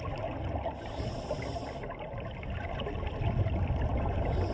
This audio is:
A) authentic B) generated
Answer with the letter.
A